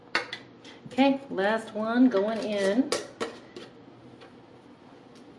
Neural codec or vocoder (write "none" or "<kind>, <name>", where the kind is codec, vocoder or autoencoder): none